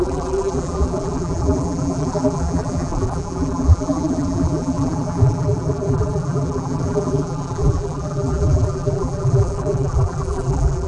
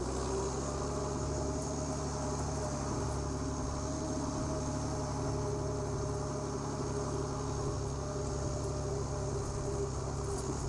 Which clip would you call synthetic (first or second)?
first